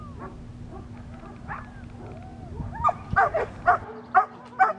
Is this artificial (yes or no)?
no